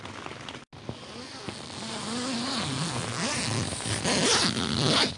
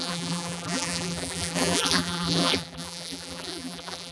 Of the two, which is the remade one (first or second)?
second